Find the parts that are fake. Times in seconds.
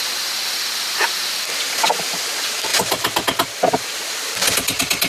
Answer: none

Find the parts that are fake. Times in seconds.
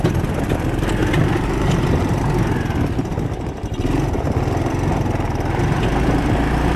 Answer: 1.0-2.2 (vocoder, BigVGAN v2)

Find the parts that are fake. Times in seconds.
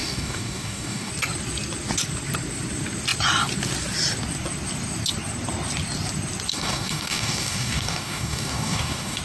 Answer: 0.0-1.1 (codec, DAC); 6.5-9.2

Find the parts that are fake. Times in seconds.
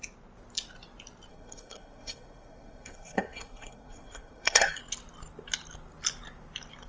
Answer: 1.3-4.8 (codec, SNAC)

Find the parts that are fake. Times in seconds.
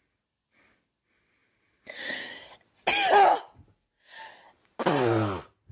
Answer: none